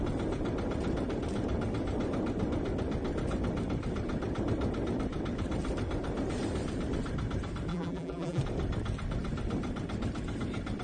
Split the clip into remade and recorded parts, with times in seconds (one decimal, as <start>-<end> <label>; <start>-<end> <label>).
0.0-7.7 recorded; 7.7-8.4 remade; 8.4-10.8 recorded